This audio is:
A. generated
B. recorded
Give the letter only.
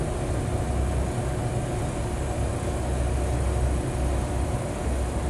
B